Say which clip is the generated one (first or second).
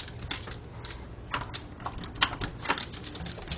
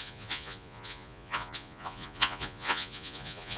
second